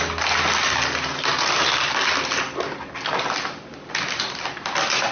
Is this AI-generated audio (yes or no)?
no